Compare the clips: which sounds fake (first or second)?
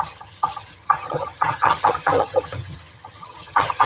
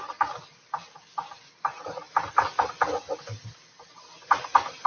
first